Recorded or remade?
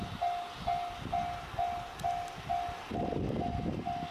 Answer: recorded